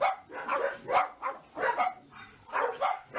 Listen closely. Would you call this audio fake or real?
real